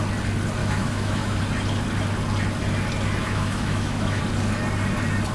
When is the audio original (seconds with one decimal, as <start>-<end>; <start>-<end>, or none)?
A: 0.0-0.6; 1.4-3.2; 4.2-5.3